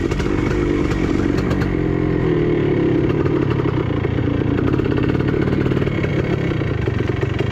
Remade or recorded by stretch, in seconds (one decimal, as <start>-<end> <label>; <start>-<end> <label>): 0.0-7.5 recorded

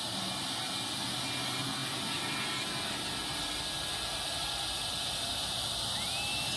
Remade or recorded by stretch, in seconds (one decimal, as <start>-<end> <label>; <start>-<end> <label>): 0.0-6.6 recorded

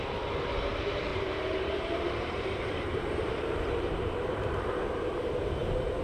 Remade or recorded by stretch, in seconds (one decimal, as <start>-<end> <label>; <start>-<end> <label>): 0.0-1.1 recorded; 1.1-4.7 remade; 4.7-6.0 recorded

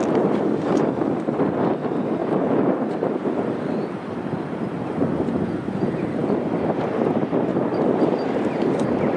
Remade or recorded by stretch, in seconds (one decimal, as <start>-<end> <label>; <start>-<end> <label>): 0.0-2.2 recorded; 2.2-4.5 remade; 4.5-7.5 recorded; 7.5-8.6 remade; 8.6-9.2 recorded